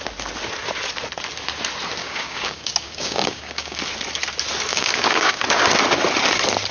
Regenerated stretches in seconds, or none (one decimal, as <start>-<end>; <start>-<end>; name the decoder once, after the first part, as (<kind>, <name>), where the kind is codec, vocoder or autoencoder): 2.0-3.8 (codec, DAC); 4.7-5.4